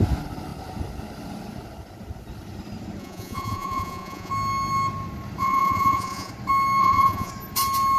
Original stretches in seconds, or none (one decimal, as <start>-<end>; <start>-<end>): 0.0-3.0; 4.3-5.4; 6.3-6.8; 7.3-8.0